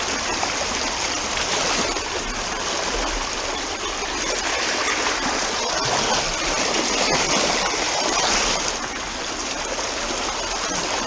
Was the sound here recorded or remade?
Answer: recorded